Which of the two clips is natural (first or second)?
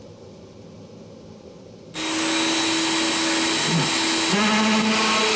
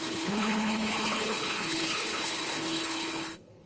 first